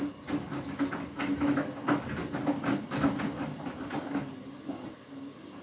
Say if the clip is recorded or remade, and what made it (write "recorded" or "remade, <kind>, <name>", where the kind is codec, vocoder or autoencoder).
recorded